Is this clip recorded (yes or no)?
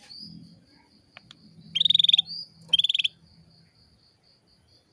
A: yes